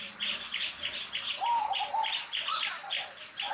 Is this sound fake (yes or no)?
no